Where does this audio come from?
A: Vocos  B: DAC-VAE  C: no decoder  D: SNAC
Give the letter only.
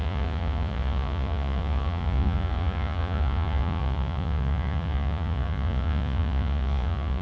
A